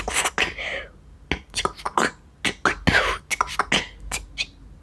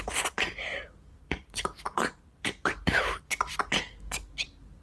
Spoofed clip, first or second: second